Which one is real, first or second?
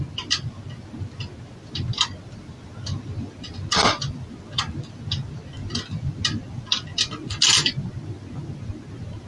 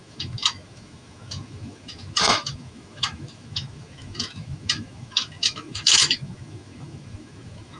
first